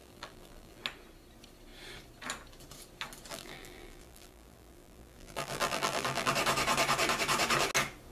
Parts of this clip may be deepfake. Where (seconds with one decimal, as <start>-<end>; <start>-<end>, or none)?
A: 0.0-0.8; 3.3-6.3